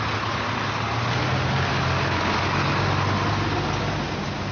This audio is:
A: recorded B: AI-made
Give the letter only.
A